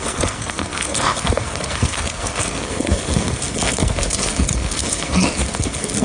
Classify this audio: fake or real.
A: fake